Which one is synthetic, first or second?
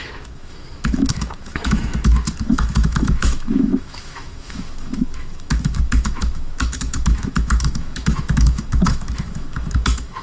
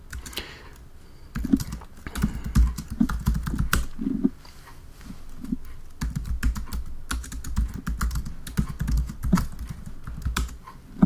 first